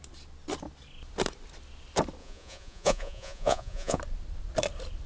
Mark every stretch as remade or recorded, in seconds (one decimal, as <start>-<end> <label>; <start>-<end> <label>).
0.0-2.2 recorded; 2.2-4.0 remade; 4.0-5.1 recorded